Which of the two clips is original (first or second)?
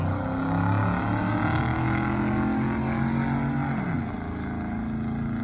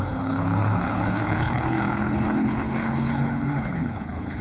first